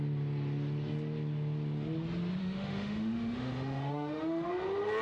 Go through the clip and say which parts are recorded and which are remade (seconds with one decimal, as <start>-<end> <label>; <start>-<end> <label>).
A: 0.0-2.4 recorded; 2.4-4.5 remade; 4.5-5.0 recorded